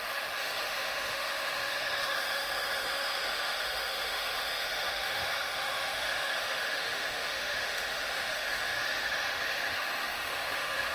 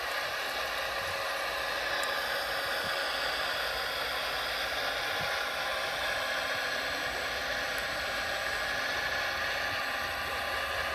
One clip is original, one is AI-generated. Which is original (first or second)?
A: second